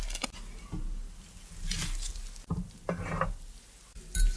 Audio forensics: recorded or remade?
recorded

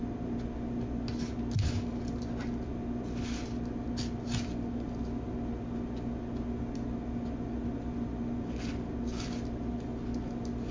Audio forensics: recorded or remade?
recorded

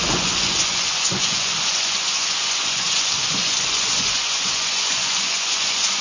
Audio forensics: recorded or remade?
remade